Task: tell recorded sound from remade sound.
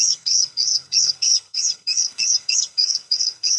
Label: remade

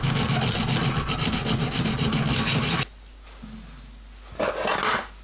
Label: recorded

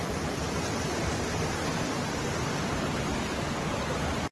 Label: recorded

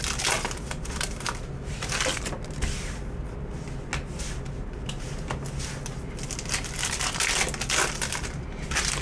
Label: recorded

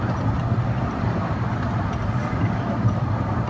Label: recorded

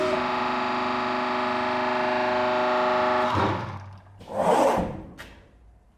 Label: recorded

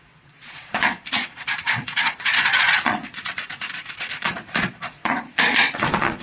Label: remade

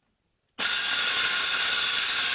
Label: recorded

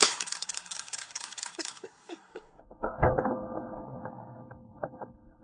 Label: remade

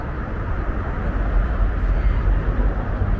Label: recorded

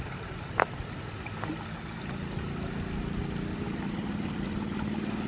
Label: recorded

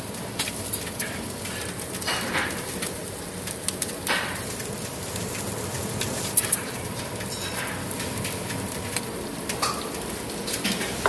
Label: remade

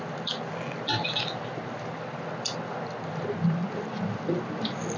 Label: recorded